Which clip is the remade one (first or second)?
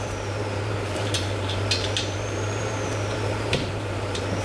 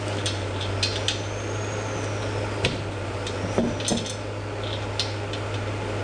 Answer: first